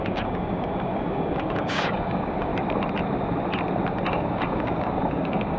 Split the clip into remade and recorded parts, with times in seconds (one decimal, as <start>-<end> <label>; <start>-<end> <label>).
0.0-2.5 remade; 2.5-4.1 recorded; 4.1-5.6 remade